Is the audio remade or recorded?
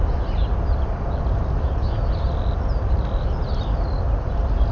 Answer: recorded